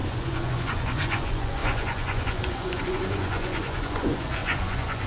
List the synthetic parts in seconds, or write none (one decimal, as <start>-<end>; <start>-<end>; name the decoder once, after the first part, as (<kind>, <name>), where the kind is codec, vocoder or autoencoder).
0.0-5.1 (vocoder, Vocos)